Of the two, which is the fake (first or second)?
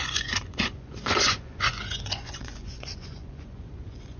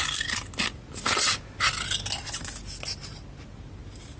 first